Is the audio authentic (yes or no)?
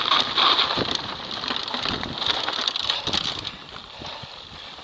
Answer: yes